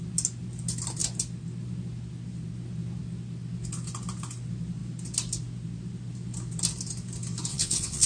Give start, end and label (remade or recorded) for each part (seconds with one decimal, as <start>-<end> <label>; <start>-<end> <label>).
0.0-7.5 recorded; 7.5-8.1 remade